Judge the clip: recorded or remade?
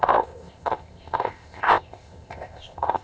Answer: remade